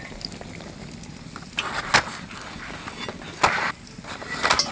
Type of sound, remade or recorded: recorded